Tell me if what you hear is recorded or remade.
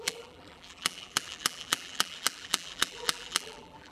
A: remade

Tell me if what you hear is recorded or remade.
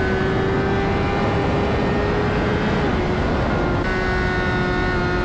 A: recorded